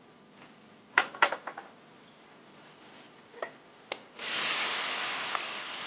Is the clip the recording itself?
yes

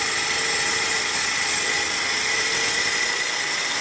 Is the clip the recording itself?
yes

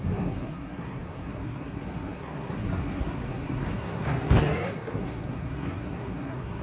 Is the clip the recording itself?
no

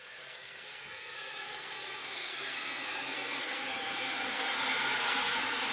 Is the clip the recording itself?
no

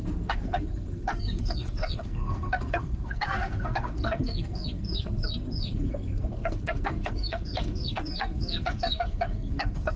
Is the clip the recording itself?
no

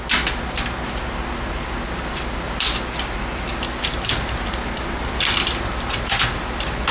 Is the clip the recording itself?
yes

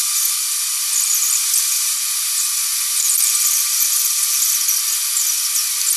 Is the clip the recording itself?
yes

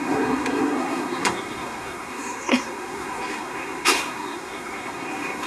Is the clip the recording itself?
no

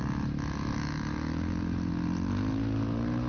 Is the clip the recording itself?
yes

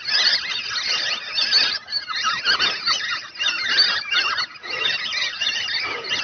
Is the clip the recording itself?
yes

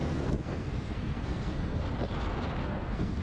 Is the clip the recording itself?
no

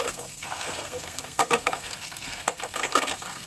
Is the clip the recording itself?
no